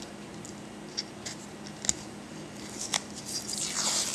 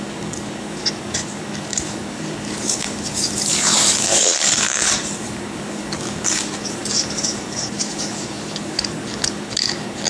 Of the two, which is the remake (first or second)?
second